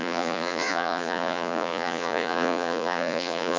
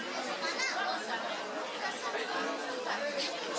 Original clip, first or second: second